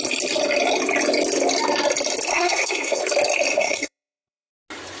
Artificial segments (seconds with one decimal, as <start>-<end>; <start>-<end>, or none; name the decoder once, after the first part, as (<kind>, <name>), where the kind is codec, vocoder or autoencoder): 2.3-3.0 (codec, SNAC); 3.5-4.5